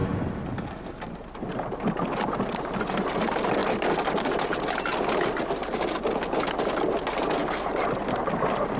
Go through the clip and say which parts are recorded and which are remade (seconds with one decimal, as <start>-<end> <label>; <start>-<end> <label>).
0.0-8.8 recorded